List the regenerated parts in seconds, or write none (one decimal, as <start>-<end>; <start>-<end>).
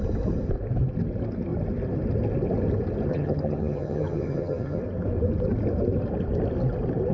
3.1-4.8